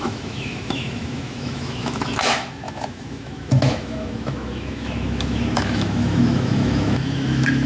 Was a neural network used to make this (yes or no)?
yes